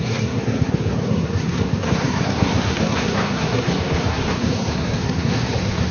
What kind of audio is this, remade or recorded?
remade